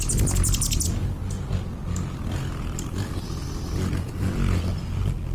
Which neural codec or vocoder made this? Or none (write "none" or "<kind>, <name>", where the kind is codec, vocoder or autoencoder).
none